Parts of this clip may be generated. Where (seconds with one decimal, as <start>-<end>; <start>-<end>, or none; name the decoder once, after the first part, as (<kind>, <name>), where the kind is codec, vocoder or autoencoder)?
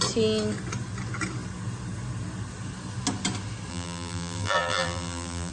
3.7-5.5 (vocoder, BigVGAN v2)